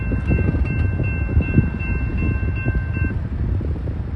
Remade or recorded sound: recorded